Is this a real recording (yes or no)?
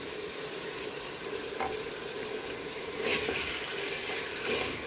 yes